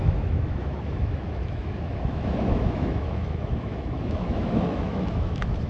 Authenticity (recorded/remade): remade